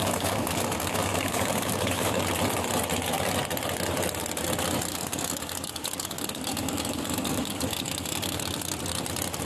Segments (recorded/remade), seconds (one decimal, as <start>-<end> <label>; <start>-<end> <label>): 0.0-2.2 remade; 2.2-4.9 recorded; 4.9-8.4 remade; 8.4-9.5 recorded